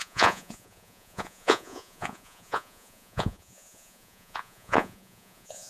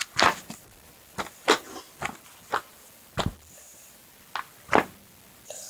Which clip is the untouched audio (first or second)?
second